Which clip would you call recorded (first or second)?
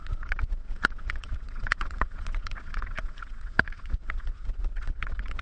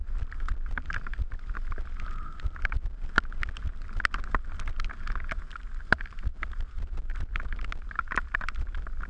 second